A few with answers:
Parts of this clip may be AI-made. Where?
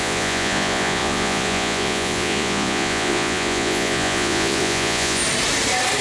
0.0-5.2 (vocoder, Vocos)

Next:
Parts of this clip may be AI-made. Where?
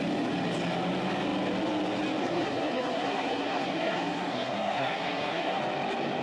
2.2-5.6 (codec, SNAC)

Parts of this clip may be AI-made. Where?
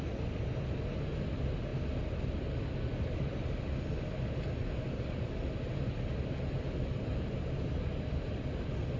none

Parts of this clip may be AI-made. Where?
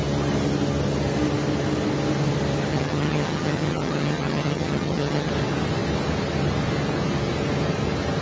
2.7-5.3 (vocoder, HiFi-GAN)